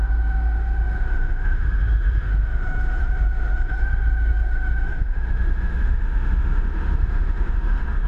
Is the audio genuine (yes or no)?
no